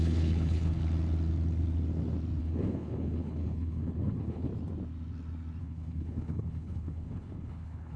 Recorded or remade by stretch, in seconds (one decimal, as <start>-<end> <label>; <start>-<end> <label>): 0.0-0.8 remade; 0.8-2.4 recorded; 2.4-4.5 remade; 4.5-5.6 recorded; 5.6-8.0 remade